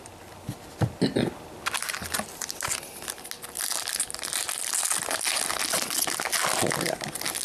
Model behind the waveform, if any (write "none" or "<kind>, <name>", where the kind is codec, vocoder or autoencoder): none